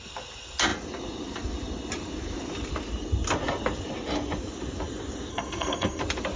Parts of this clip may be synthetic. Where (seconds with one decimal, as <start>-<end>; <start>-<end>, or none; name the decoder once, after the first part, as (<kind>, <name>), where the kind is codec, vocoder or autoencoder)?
5.3-6.0 (codec, SNAC)